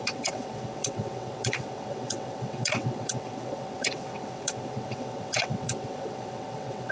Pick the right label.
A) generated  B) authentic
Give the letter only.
A